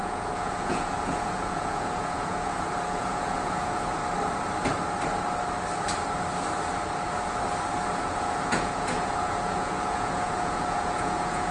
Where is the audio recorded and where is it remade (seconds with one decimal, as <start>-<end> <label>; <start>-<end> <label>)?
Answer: 0.0-4.0 remade; 4.0-8.0 recorded; 8.0-11.5 remade